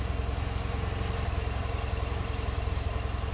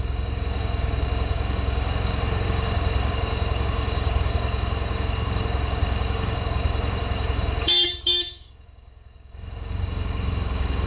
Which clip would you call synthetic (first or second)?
second